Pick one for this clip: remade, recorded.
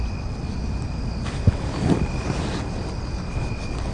recorded